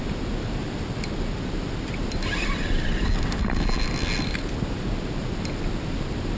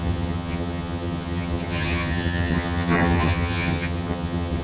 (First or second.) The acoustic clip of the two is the first